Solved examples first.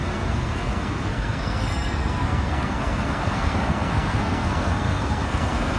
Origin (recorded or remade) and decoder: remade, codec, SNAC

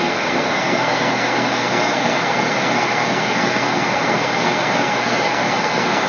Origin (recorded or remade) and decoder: remade, codec, SNAC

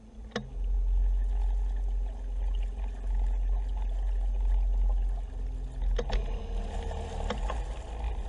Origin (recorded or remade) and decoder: recorded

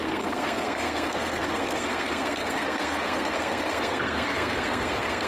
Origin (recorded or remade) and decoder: remade, codec, SNAC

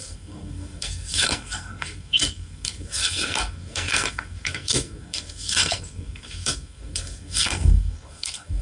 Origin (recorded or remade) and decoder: remade, codec, SNAC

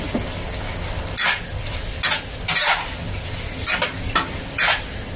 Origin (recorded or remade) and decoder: recorded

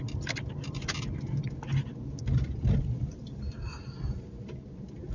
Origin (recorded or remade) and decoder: recorded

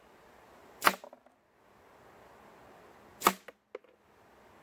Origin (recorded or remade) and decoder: recorded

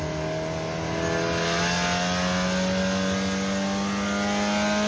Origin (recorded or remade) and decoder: recorded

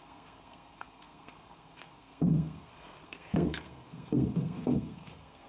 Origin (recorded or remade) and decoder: remade, codec, SNAC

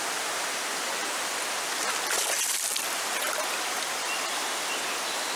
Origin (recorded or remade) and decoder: recorded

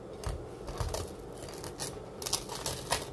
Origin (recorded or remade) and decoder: recorded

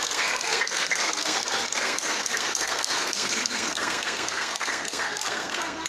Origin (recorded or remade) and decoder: remade, codec, SNAC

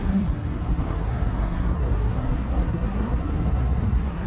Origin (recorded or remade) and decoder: remade, codec, SNAC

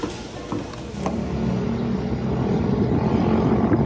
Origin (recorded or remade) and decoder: recorded